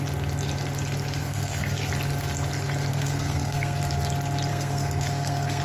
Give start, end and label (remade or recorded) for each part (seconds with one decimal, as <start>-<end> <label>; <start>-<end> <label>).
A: 0.0-1.2 recorded; 1.2-1.9 remade; 1.9-2.9 recorded; 2.9-3.8 remade; 3.8-4.5 recorded; 4.5-5.6 remade